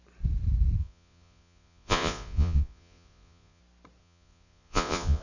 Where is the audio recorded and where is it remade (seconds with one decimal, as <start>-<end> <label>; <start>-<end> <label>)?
0.0-0.8 recorded; 0.8-3.6 remade; 3.6-4.0 recorded; 4.0-5.2 remade